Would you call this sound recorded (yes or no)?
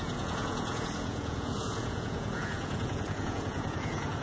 no